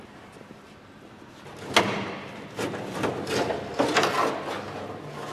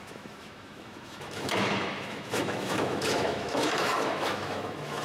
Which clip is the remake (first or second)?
second